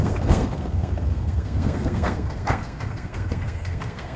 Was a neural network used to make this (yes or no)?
yes